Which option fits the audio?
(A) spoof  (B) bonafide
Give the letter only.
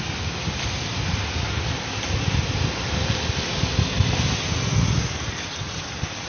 B